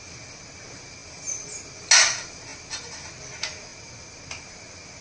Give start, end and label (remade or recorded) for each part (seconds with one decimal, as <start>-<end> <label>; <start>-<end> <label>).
0.0-5.0 recorded